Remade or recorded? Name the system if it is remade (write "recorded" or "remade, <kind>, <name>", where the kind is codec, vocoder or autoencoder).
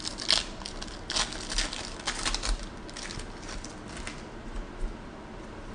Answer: recorded